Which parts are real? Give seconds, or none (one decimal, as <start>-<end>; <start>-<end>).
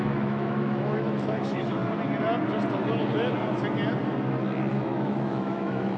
1.8-4.7